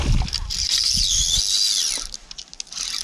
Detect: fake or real real